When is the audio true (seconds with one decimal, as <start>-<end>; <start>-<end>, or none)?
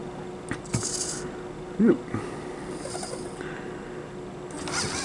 0.0-5.0